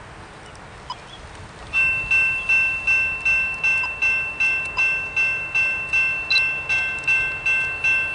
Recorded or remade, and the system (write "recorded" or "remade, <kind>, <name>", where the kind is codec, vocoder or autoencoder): recorded